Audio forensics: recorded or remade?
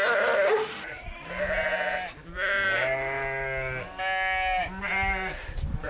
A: recorded